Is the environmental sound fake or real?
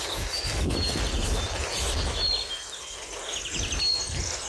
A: real